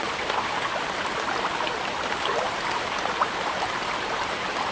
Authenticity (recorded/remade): recorded